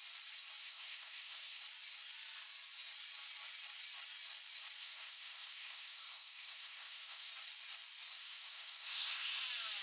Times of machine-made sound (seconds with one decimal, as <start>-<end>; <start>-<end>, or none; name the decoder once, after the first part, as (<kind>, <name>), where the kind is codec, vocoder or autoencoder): 0.6-1.6 (codec, SNAC); 4.8-7.3; 8.2-9.4